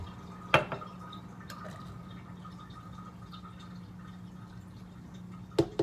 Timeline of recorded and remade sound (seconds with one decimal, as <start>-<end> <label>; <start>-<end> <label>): 0.0-5.8 recorded